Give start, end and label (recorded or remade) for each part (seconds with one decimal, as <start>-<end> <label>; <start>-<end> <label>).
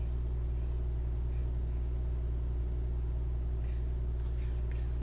0.0-5.0 recorded